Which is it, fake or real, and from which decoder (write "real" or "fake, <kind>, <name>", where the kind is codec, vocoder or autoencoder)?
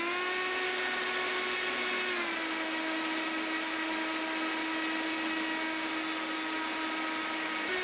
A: real